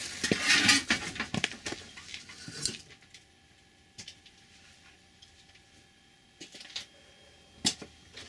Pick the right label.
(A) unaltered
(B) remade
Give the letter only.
A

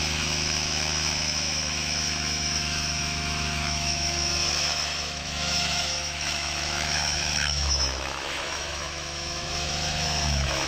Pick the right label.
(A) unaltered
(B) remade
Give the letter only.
B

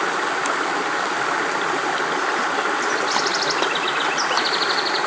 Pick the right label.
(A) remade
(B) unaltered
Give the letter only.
B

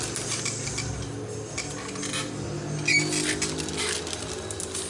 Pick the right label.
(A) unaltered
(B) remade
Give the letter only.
A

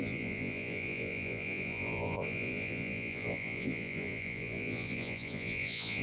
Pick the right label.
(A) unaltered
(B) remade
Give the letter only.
B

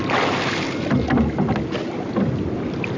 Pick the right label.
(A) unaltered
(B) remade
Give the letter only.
A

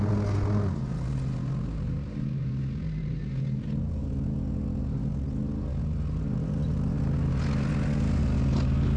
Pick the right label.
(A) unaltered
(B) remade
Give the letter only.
A